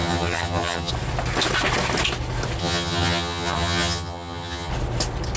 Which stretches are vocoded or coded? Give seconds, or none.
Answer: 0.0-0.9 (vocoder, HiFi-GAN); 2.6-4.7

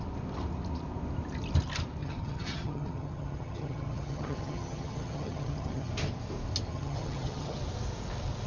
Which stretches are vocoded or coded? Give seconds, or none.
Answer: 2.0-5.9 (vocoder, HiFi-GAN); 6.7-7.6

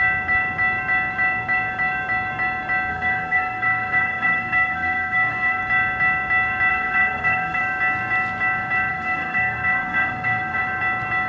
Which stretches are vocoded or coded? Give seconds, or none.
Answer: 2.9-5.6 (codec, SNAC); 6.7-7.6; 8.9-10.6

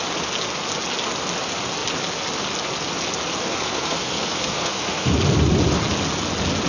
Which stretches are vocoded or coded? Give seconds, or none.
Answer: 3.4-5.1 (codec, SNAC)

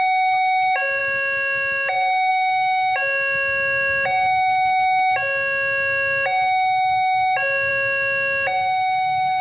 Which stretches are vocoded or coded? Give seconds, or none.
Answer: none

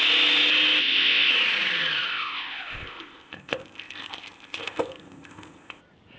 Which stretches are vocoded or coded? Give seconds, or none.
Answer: 0.8-1.3 (codec, ZipCodec); 2.1-5.8